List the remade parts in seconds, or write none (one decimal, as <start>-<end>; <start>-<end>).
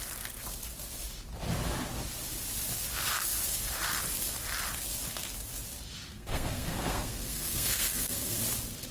6.1-8.4